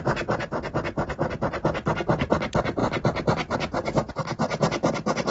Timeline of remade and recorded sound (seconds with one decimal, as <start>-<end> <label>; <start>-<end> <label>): 0.0-5.3 recorded

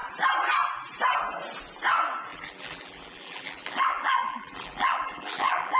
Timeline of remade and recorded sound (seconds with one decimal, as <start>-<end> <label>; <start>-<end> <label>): 0.0-2.3 recorded; 2.3-5.8 remade

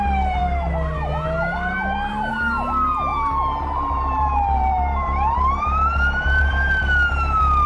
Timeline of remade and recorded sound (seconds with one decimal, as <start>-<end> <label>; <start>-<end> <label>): 0.0-3.1 recorded; 3.1-6.5 remade; 6.5-7.7 recorded

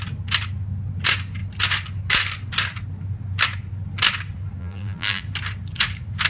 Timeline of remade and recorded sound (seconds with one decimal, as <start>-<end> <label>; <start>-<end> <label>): 0.0-4.6 recorded; 4.6-5.2 remade; 5.2-6.3 recorded

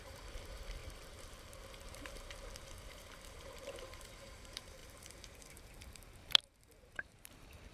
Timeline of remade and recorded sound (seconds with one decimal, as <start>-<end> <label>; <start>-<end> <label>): 0.0-7.7 remade

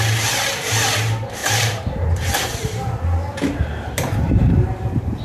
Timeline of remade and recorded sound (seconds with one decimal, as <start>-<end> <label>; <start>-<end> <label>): 0.0-1.4 recorded; 1.4-4.5 remade; 4.5-5.2 recorded

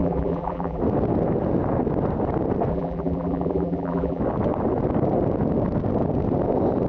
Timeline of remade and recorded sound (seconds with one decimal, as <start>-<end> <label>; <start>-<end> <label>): 0.0-0.8 remade; 0.8-2.7 recorded; 2.7-4.2 remade; 4.2-6.9 recorded